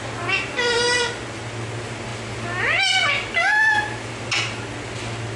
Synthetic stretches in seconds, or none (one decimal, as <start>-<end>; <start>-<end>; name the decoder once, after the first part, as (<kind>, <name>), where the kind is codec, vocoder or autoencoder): none

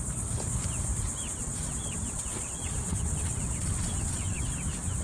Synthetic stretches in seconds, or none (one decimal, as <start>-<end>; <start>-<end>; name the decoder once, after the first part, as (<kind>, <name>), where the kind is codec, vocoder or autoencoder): 1.4-4.4 (vocoder, WaveNeXt)

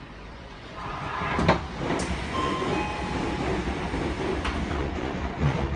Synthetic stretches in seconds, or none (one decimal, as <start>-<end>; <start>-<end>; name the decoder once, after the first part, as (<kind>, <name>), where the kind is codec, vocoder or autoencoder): 0.0-1.1 (vocoder, Vocos); 2.2-2.7; 4.4-5.8

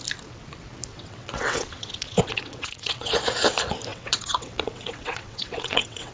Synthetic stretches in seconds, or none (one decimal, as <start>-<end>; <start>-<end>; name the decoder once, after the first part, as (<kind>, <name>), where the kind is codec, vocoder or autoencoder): 0.9-3.1 (vocoder, WaveNeXt); 3.9-6.1

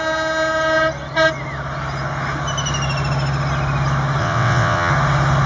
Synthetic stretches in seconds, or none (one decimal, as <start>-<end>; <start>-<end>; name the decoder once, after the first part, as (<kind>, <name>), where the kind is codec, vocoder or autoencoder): 4.2-4.9 (vocoder, WaveNeXt)